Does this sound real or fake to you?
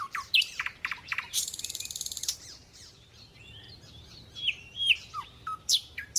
fake